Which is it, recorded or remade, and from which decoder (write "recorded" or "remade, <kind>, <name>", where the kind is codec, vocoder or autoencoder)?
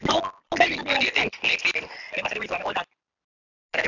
recorded